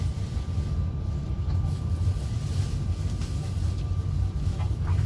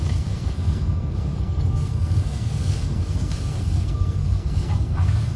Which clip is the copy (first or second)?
second